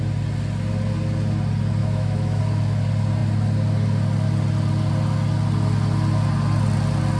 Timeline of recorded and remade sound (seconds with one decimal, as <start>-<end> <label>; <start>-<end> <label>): 0.0-1.8 recorded; 1.8-2.4 remade; 2.4-7.2 recorded